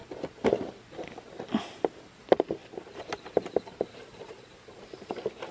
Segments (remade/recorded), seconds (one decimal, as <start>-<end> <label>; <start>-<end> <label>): 0.0-2.6 recorded; 2.6-5.1 remade; 5.1-5.5 recorded